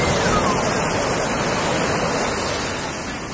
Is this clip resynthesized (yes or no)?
no